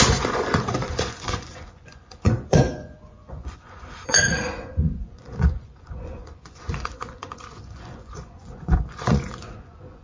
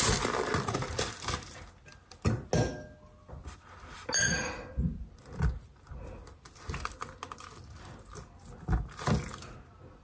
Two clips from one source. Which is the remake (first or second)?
first